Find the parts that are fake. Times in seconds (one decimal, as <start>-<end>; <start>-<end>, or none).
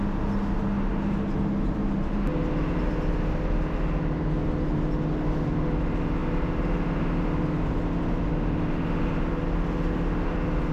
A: none